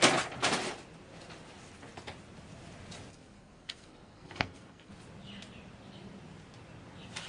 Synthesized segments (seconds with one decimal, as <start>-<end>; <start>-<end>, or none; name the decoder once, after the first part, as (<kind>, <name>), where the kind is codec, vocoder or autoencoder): 3.1-4.9 (codec, SNAC)

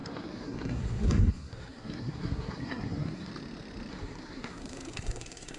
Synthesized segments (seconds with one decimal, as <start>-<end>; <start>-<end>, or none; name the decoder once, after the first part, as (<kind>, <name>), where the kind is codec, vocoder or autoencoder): 0.0-3.3 (codec, SNAC); 3.9-5.6

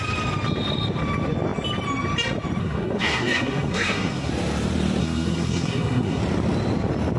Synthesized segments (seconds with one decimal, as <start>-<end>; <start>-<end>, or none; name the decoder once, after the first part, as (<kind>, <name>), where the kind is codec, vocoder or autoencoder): 2.6-4.3 (codec, SNAC); 5.0-6.2

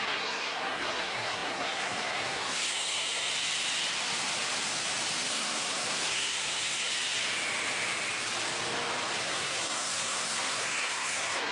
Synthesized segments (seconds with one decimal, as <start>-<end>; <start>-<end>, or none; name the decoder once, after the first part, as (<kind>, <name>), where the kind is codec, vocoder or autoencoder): 0.0-3.3 (codec, SNAC); 5.3-6.9; 9.2-11.5

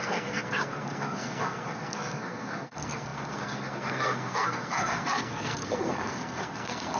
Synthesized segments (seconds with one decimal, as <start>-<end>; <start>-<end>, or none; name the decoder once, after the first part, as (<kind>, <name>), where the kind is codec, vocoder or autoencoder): 0.0-7.0 (codec, SNAC)

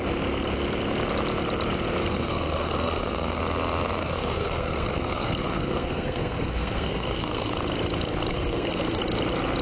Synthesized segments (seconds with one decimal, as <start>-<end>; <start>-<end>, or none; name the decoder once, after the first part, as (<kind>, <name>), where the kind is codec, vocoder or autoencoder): 2.0-3.4 (codec, SNAC); 4.0-7.5; 8.3-9.0

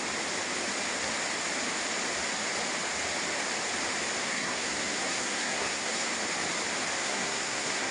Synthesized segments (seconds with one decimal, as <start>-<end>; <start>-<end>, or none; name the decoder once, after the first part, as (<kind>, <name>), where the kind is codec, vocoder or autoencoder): 4.2-6.1 (codec, SNAC); 7.0-7.9

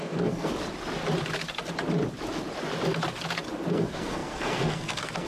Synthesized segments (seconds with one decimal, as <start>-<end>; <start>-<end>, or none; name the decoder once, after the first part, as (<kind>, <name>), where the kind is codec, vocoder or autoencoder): 0.0-0.5 (codec, SNAC); 3.7-5.3